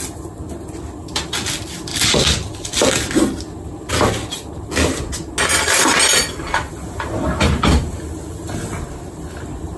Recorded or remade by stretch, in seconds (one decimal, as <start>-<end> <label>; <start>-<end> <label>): 0.0-9.8 recorded

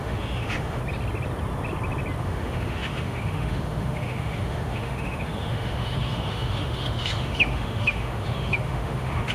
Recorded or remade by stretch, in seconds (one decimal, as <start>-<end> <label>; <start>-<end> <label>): 0.0-0.8 remade; 0.8-2.2 recorded; 2.2-9.3 remade

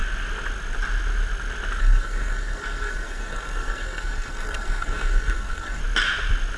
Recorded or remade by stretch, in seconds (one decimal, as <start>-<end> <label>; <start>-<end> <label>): 0.0-1.8 recorded; 1.8-5.8 remade; 5.8-6.6 recorded

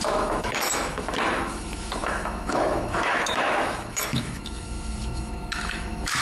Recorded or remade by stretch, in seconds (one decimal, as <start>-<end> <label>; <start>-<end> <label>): 0.0-6.2 remade

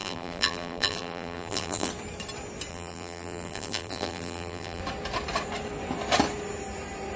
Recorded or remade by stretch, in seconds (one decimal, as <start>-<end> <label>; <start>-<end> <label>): 0.0-1.9 remade; 1.9-2.7 recorded; 2.7-4.8 remade; 4.8-7.2 recorded

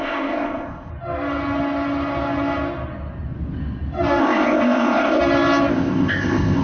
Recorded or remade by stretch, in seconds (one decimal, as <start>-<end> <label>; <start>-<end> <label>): 0.0-0.9 remade; 0.9-4.2 recorded; 4.2-5.2 remade; 5.2-5.7 recorded; 5.7-6.6 remade

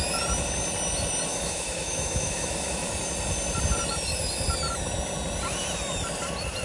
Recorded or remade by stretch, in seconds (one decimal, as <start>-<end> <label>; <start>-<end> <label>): 0.0-1.3 recorded; 1.3-2.9 remade; 2.9-6.6 recorded

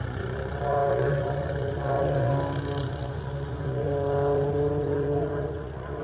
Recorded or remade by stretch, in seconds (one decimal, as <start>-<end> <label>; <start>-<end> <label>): 0.0-2.3 remade; 2.3-2.8 recorded; 2.8-6.0 remade